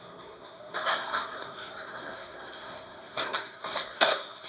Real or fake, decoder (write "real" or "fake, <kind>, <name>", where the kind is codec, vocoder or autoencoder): fake, codec, SNAC